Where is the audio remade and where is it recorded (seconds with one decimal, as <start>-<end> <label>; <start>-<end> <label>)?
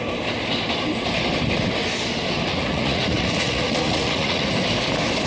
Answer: 0.0-2.5 recorded; 2.5-4.5 remade; 4.5-5.3 recorded